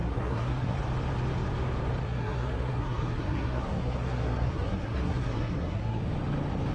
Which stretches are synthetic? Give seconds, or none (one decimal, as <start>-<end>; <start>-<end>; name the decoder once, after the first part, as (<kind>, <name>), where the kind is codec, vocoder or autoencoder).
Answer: 0.0-0.8 (codec, SNAC); 2.0-6.0